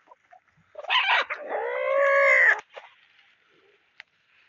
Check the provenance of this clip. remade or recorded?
recorded